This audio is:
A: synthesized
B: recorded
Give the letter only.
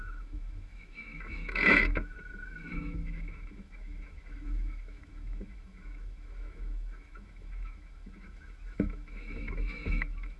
A